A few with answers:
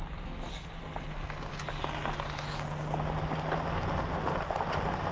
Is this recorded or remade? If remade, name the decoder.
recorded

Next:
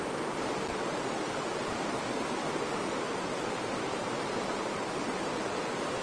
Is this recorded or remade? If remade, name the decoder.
remade, vocoder, BigVGAN v2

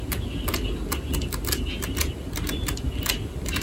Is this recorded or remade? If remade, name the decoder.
recorded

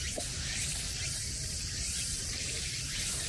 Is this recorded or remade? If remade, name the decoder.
remade, vocoder, BigVGAN v2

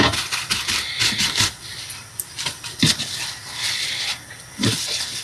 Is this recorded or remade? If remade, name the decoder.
remade, vocoder, BigVGAN v2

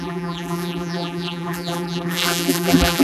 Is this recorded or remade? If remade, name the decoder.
remade, vocoder, BigVGAN v2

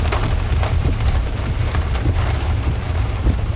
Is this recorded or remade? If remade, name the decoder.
remade, vocoder, BigVGAN v2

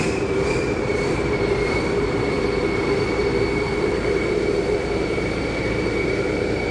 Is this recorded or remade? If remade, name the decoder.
remade, vocoder, BigVGAN v2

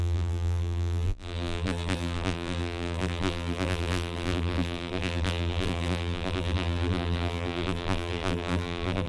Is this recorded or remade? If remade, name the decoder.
remade, vocoder, BigVGAN v2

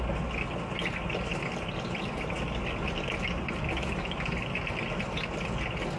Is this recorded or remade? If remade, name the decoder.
recorded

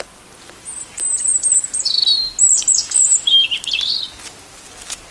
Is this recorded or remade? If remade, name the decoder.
recorded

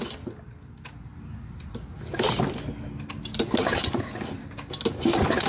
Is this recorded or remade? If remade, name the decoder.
recorded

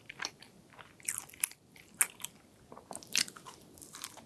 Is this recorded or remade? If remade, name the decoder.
recorded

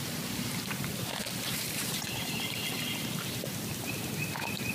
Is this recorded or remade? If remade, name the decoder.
remade, vocoder, BigVGAN v2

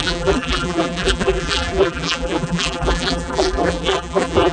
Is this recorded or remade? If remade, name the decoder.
remade, vocoder, BigVGAN v2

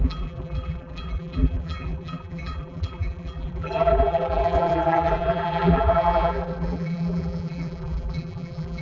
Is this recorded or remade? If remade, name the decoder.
remade, vocoder, BigVGAN v2